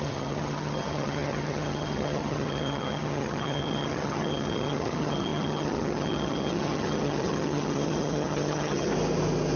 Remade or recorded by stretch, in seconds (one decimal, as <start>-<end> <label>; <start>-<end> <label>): 0.0-8.9 remade; 8.9-9.6 recorded